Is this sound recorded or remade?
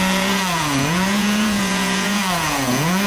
remade